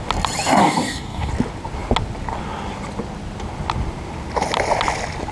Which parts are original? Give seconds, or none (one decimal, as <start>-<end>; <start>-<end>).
0.0-0.6; 1.3-5.3